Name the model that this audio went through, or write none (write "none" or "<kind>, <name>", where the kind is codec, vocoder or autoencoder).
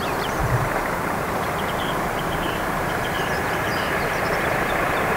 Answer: vocoder, BigVGAN v2